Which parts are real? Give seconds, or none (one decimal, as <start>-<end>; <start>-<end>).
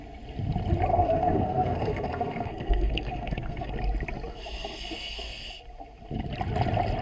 0.0-0.9; 3.7-4.3; 5.5-7.0